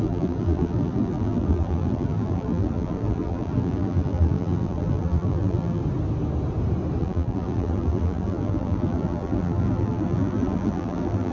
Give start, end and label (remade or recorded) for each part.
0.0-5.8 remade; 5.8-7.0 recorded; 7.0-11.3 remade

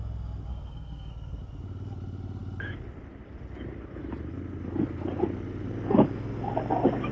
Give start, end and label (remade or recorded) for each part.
0.0-0.5 recorded; 0.5-1.4 remade; 1.4-7.1 recorded

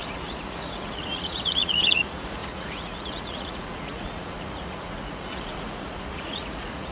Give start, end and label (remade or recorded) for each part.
0.0-6.9 remade

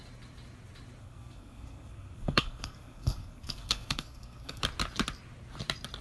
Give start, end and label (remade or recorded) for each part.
0.0-1.0 recorded; 1.0-4.6 remade; 4.6-6.0 recorded